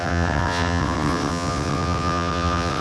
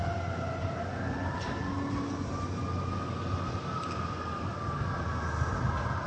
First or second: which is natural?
second